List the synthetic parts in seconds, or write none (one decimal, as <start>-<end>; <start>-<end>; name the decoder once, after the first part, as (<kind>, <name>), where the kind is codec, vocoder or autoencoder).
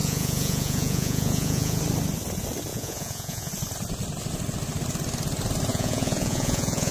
0.0-1.8 (vocoder, Vocos); 2.7-3.5; 5.7-6.9